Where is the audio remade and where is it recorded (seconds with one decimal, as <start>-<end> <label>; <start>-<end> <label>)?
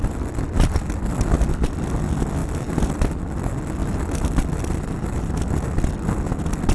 0.0-6.7 recorded